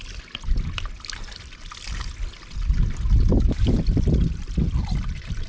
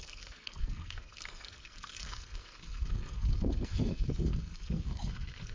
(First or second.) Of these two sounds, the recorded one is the first